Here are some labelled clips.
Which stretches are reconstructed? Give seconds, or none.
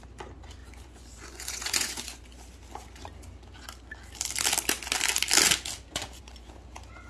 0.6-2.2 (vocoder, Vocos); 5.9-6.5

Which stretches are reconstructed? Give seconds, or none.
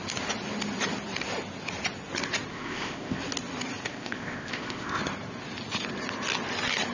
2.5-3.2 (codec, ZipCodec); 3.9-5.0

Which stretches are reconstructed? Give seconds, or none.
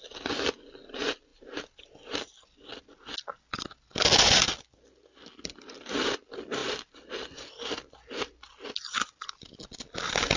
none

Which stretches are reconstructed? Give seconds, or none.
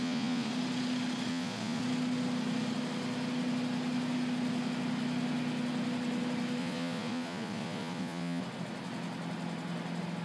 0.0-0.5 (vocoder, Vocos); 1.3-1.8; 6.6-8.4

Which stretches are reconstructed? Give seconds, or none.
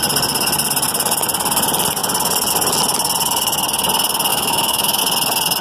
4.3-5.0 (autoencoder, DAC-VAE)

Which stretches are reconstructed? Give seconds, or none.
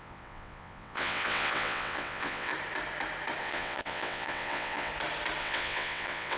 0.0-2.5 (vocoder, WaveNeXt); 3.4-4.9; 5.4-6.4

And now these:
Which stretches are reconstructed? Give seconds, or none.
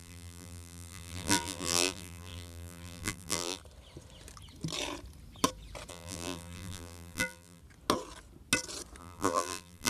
0.0-3.6 (vocoder, BigVGAN v2); 5.9-7.6; 9.0-9.9